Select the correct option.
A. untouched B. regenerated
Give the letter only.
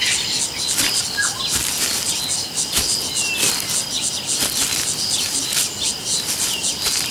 A